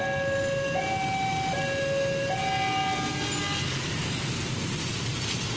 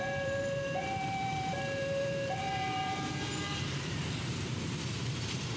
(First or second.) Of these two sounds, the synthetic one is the second